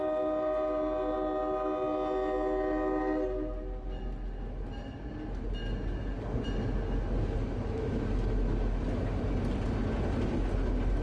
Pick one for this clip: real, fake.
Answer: real